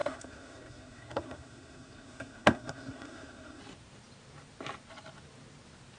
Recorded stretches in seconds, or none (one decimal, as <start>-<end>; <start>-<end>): 3.6-6.0

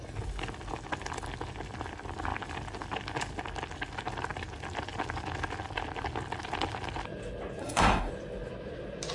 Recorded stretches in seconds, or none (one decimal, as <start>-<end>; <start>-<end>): 0.0-7.6; 8.1-9.1

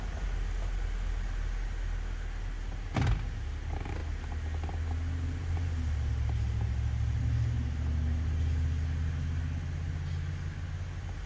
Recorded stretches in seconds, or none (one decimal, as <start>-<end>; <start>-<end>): 0.0-11.3

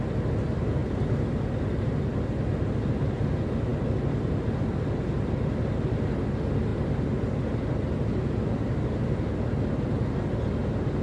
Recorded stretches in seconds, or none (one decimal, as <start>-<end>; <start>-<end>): 0.0-11.0